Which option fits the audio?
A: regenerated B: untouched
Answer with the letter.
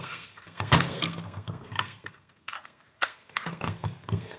A